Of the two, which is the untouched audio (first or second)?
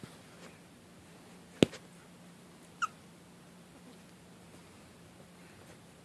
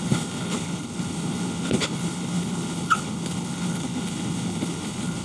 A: first